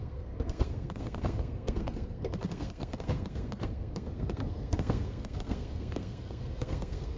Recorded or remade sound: remade